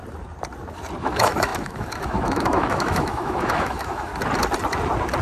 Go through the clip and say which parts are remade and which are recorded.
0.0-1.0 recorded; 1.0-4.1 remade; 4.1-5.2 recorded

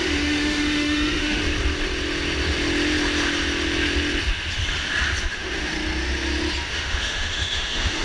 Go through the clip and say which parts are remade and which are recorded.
0.0-1.4 remade; 1.4-5.3 recorded; 5.3-5.7 remade; 5.7-6.7 recorded; 6.7-8.0 remade

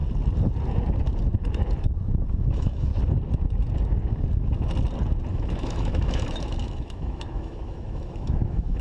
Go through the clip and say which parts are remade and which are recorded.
0.0-2.4 recorded; 2.4-2.9 remade; 2.9-5.3 recorded; 5.3-8.8 remade

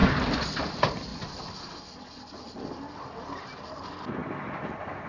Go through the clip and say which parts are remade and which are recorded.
0.0-5.1 recorded

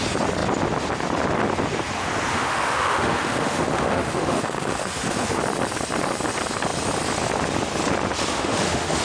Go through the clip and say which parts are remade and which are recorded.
0.0-2.3 recorded; 2.3-5.4 remade; 5.4-8.3 recorded; 8.3-9.0 remade

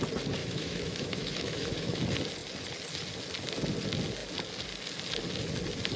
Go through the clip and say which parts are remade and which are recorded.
0.0-0.4 recorded; 0.4-2.0 remade; 2.0-6.0 recorded

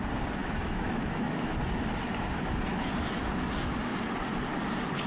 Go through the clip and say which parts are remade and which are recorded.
0.0-0.4 recorded; 0.4-1.5 remade; 1.5-2.7 recorded; 2.7-3.3 remade; 3.3-5.1 recorded

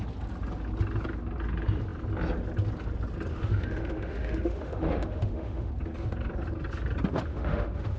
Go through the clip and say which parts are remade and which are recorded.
0.0-3.3 recorded; 3.3-5.7 remade; 5.7-7.3 recorded; 7.3-8.0 remade